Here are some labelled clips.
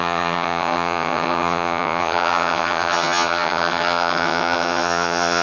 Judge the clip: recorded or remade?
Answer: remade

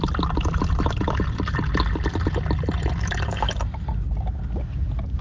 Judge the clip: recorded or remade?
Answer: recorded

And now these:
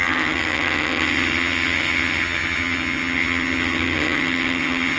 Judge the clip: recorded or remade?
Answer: remade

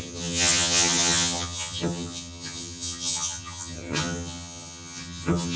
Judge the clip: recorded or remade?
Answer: remade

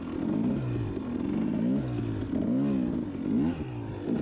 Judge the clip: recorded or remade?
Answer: recorded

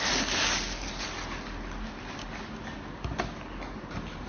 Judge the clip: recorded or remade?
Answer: recorded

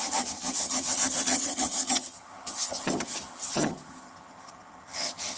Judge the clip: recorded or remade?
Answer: remade